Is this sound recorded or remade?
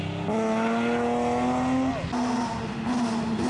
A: recorded